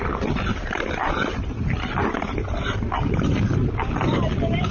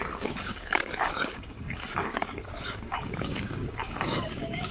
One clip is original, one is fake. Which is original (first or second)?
first